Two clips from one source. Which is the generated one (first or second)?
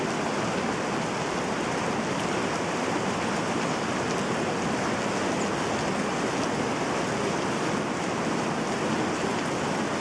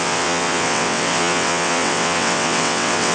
second